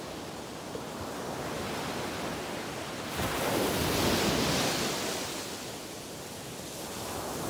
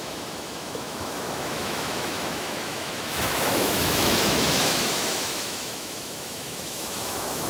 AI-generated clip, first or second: second